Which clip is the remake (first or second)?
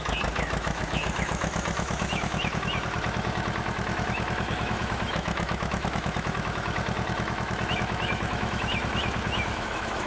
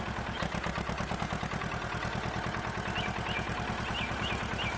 first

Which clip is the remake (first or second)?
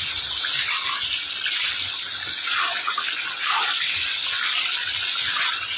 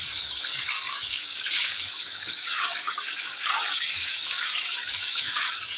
second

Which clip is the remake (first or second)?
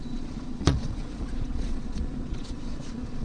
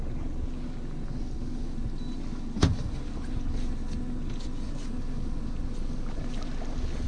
first